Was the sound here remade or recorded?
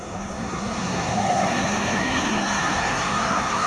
remade